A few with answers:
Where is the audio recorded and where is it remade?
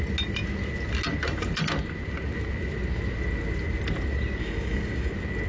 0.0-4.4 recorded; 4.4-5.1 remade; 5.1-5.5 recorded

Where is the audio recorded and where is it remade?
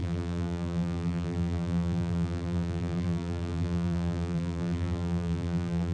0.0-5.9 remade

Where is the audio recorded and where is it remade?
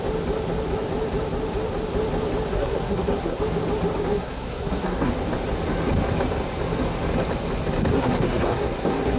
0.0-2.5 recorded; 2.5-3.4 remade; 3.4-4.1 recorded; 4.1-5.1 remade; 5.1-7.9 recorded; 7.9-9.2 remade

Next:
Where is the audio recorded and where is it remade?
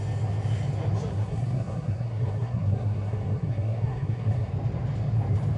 0.0-1.1 recorded; 1.1-4.5 remade; 4.5-5.6 recorded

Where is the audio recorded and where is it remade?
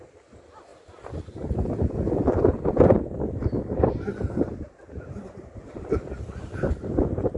0.0-0.7 remade; 0.7-2.7 recorded; 2.7-7.4 remade